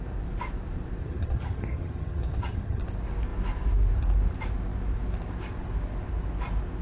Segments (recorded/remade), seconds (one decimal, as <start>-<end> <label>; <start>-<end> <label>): 0.0-1.0 recorded; 1.0-2.8 remade; 2.8-6.8 recorded